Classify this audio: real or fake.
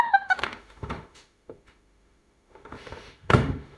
fake